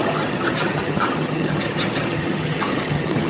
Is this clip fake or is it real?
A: fake